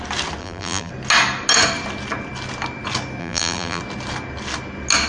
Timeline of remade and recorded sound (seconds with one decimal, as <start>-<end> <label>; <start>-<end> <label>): 0.0-0.4 recorded; 0.4-0.9 remade; 0.9-3.2 recorded; 3.2-3.8 remade; 3.8-5.1 recorded